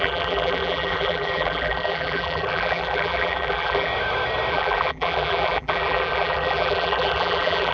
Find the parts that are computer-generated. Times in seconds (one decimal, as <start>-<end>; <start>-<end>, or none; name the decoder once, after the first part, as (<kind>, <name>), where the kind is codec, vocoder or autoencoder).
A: 0.0-3.9 (vocoder, BigVGAN v2); 4.5-7.7